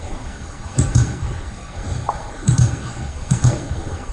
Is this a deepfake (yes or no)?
yes